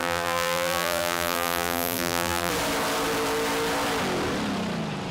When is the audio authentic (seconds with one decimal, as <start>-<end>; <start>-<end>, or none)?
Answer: 2.5-5.1